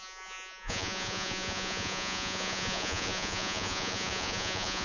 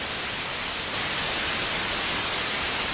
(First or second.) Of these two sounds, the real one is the second